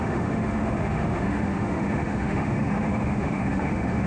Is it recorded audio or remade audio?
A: remade